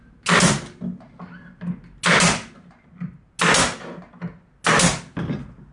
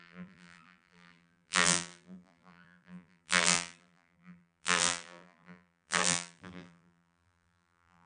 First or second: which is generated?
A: second